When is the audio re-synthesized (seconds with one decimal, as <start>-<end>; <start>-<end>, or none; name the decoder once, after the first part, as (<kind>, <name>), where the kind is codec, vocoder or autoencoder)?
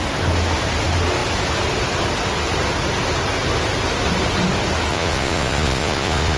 4.9-6.4 (vocoder, Vocos)